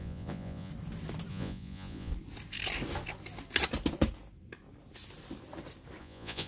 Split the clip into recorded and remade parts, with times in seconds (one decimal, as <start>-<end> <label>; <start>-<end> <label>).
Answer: 0.0-0.7 remade; 0.7-1.3 recorded; 1.3-2.1 remade; 2.1-6.0 recorded; 6.0-6.5 remade